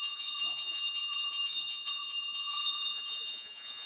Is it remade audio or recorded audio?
remade